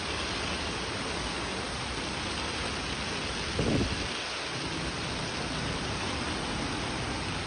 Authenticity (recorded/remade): recorded